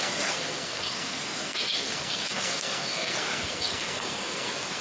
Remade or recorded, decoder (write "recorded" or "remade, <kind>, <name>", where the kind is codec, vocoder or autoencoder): remade, codec, SNAC